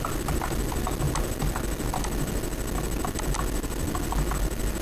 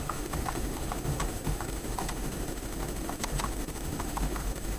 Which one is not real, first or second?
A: second